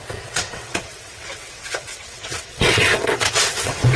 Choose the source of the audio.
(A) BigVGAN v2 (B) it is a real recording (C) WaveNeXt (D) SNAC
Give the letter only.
C